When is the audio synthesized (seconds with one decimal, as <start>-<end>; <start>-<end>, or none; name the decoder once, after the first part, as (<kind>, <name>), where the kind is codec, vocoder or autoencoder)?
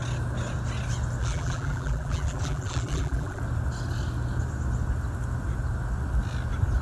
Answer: 1.2-3.4 (vocoder, BigVGAN v2)